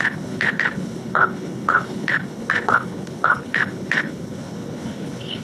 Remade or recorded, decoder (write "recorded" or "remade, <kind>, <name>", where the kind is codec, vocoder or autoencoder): remade, codec, HILCodec